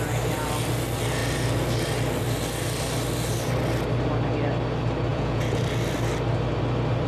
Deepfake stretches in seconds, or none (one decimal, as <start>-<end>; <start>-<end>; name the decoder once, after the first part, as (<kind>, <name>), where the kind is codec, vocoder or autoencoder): 5.1-5.6 (vocoder, Vocos)